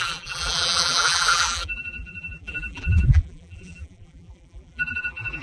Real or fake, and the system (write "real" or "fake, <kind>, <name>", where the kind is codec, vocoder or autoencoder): fake, vocoder, BigVGAN v2